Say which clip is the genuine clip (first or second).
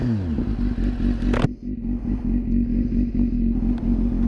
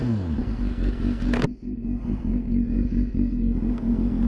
first